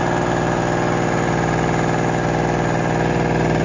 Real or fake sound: real